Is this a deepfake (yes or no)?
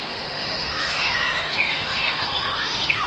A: yes